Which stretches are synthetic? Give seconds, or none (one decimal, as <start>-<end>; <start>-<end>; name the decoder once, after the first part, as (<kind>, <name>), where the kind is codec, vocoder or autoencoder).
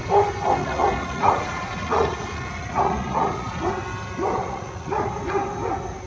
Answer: 0.6-3.7 (vocoder, Vocos); 4.4-5.1